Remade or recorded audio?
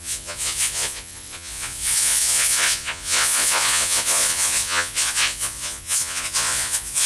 remade